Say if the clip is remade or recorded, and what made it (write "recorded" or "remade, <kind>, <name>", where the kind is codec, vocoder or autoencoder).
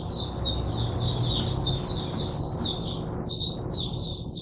recorded